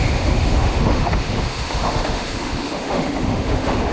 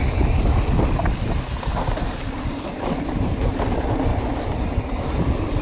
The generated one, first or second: first